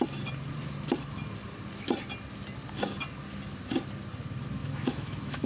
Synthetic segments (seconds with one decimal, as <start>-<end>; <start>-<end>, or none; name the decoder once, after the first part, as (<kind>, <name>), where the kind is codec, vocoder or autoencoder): 4.6-5.5 (autoencoder, DAC-VAE)